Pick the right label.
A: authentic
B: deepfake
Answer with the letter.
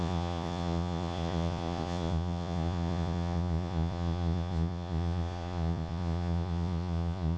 B